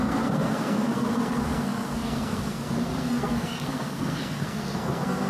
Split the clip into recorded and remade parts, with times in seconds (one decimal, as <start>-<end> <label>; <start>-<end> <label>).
0.0-5.3 remade